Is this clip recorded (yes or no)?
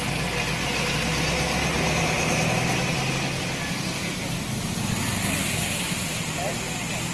yes